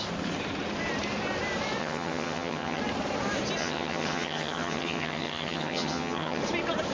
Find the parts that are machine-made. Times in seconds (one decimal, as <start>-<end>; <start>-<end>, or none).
1.8-2.8; 3.6-6.4